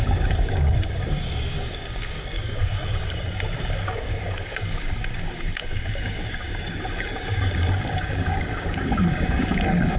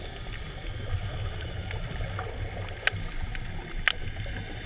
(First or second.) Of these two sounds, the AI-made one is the first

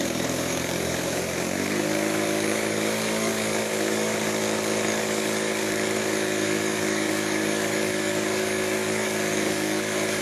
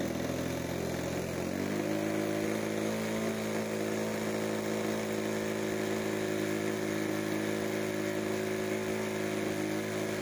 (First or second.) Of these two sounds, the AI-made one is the first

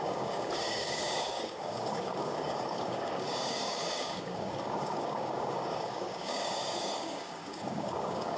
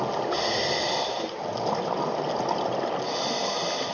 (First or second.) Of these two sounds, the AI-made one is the first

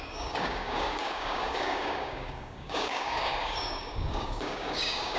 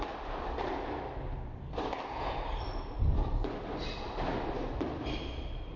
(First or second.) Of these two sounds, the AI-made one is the first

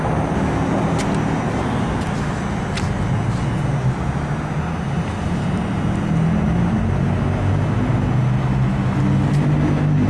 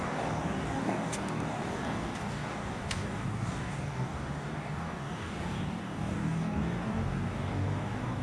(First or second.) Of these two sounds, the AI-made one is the second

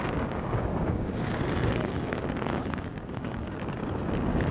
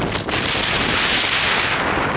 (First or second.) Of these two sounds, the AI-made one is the first